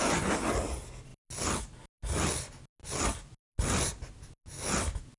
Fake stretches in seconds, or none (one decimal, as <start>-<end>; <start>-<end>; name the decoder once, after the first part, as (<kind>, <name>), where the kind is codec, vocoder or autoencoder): none